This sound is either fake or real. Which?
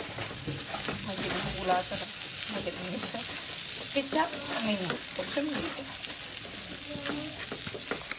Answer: real